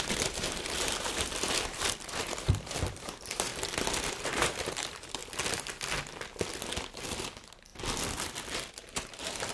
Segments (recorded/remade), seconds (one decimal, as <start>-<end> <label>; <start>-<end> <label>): 0.0-3.5 remade; 3.5-4.1 recorded; 4.1-5.2 remade; 5.2-7.0 recorded; 7.0-7.7 remade; 7.7-8.7 recorded; 8.7-9.5 remade